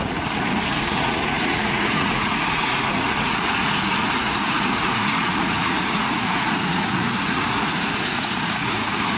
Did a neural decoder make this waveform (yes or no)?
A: yes